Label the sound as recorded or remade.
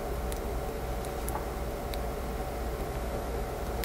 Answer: recorded